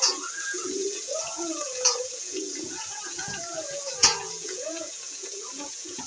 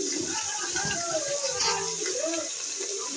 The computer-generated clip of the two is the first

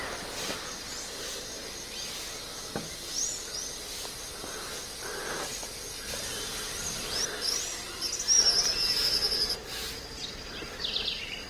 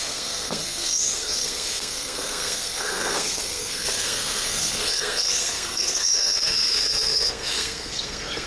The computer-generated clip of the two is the second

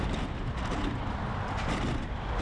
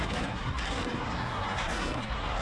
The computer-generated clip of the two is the second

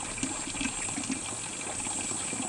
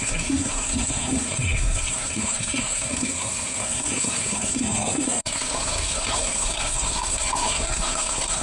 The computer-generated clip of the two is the second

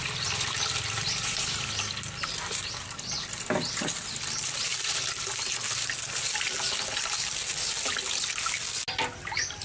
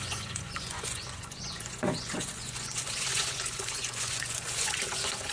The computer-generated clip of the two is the second